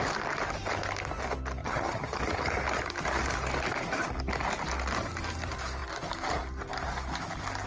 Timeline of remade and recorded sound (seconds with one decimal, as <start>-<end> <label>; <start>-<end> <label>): 0.0-1.6 recorded; 1.6-2.2 remade; 2.2-7.7 recorded